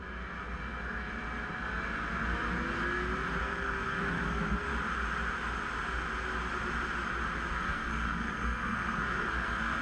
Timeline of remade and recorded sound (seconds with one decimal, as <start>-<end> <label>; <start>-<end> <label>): 0.0-3.4 recorded; 3.4-4.7 remade; 4.7-7.5 recorded; 7.5-9.8 remade